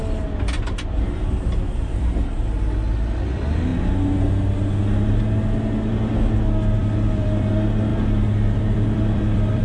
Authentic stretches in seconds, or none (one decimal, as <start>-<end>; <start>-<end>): 0.0-6.8; 7.5-7.9